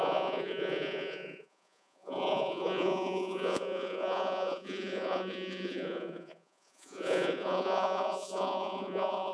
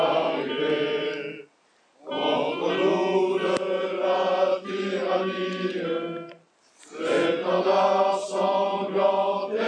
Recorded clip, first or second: second